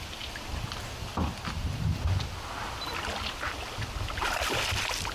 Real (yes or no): yes